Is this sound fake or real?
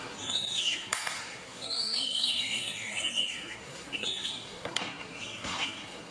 fake